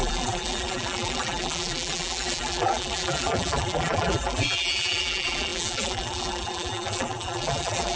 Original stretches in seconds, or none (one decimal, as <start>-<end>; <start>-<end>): none